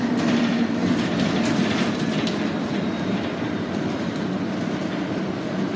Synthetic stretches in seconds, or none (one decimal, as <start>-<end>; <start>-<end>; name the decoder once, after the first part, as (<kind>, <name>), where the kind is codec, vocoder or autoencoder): 0.8-4.3 (vocoder, BigVGAN v2)